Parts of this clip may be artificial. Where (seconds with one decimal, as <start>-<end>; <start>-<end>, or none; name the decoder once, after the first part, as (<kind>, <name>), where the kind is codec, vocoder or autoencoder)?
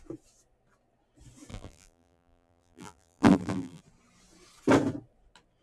1.5-3.8 (vocoder, BigVGAN v2)